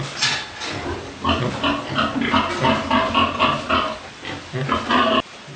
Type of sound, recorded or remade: recorded